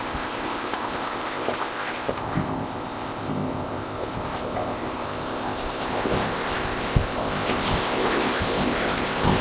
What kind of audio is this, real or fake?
fake